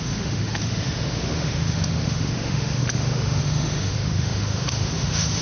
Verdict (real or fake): fake